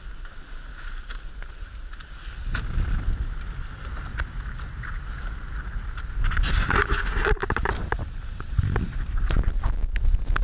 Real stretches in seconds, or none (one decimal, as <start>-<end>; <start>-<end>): 0.0-7.4; 8.4-10.4